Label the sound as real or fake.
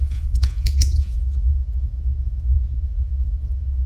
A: fake